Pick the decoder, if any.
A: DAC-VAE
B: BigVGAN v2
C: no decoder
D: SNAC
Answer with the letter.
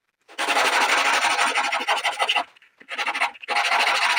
C